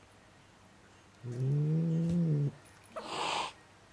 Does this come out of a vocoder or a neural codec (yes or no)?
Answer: no